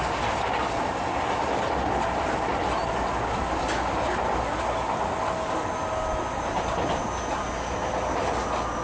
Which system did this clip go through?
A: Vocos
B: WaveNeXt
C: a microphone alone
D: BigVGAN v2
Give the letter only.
C